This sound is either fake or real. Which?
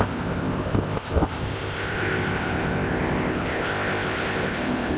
fake